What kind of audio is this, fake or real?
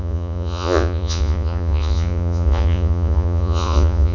fake